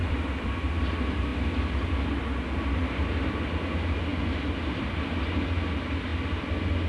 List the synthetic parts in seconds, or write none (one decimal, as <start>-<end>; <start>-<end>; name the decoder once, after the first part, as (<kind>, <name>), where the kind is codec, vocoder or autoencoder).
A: 0.0-0.5 (vocoder, BigVGAN v2)